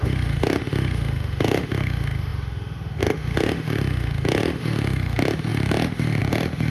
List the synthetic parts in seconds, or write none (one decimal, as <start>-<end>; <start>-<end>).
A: 0.0-6.7